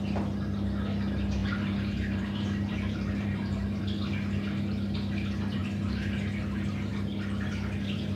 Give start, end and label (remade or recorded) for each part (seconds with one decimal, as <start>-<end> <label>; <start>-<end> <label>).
0.0-1.4 recorded; 1.4-3.8 remade; 3.8-8.2 recorded